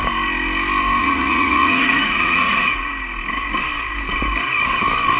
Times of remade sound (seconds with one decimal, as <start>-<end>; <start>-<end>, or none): 1.0-2.9